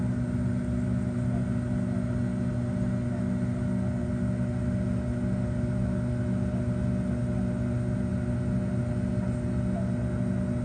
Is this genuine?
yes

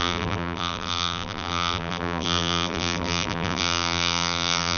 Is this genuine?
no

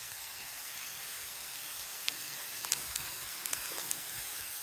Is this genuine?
no